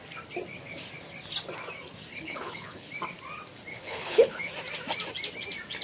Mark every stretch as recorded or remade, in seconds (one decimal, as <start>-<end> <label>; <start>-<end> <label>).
0.0-2.1 recorded; 2.1-2.9 remade; 2.9-3.7 recorded; 3.7-4.5 remade; 4.5-5.8 recorded